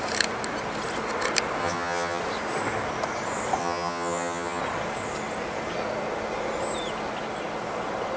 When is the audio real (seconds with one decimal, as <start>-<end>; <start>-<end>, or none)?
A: 0.0-1.6; 2.2-3.6; 4.6-8.2